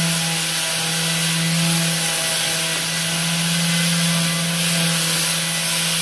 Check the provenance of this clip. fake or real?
real